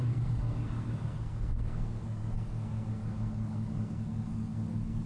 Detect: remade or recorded remade